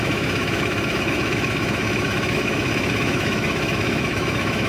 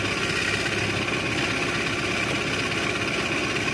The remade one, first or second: first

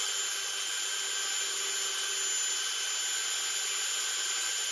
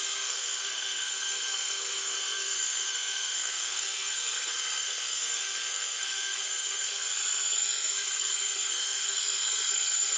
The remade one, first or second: second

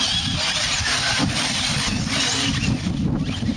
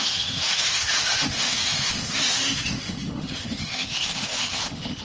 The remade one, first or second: second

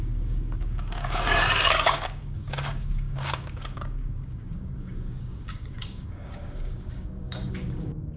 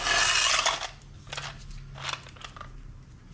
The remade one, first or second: first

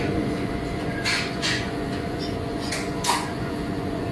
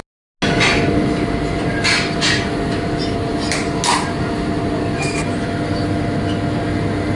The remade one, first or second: first